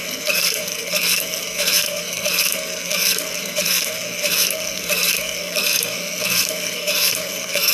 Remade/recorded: remade